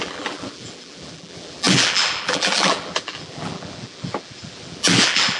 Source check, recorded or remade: remade